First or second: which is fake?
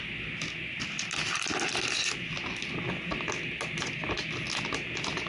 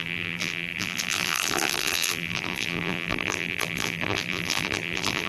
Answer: second